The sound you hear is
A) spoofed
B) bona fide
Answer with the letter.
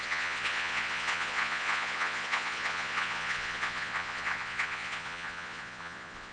A